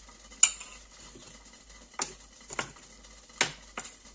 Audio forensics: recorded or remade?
recorded